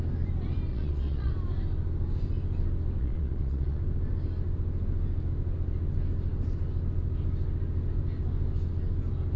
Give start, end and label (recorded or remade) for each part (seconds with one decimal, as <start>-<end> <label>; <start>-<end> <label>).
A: 0.0-0.7 recorded; 0.7-1.3 remade; 1.3-3.0 recorded; 3.0-3.8 remade; 3.8-9.4 recorded